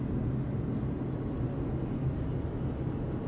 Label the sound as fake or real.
real